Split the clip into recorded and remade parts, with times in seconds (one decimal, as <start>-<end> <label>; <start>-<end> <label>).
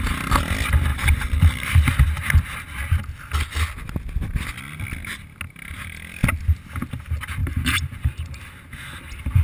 0.0-0.9 recorded; 0.9-1.7 remade; 1.7-7.4 recorded; 7.4-8.7 remade; 8.7-9.4 recorded